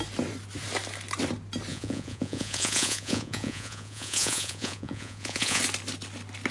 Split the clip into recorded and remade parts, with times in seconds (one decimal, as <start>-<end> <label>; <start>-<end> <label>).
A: 0.0-1.7 recorded; 1.7-5.6 remade; 5.6-6.5 recorded